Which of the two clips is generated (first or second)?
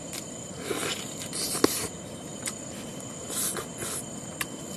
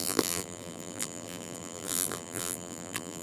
second